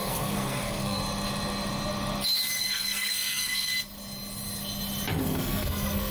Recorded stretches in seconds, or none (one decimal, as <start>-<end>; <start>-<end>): 1.0-2.6; 3.7-5.2